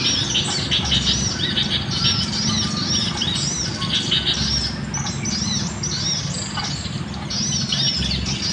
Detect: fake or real real